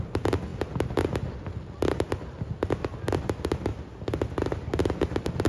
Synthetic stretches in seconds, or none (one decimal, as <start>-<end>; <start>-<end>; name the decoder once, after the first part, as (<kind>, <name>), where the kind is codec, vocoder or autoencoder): none